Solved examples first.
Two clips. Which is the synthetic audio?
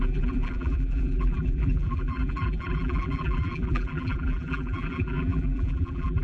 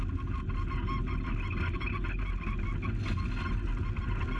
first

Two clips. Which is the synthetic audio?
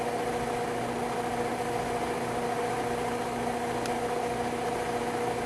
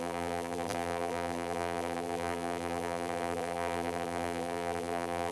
second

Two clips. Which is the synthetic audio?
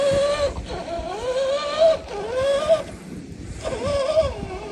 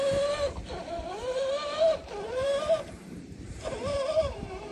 second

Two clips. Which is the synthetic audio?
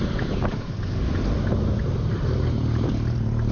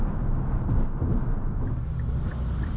first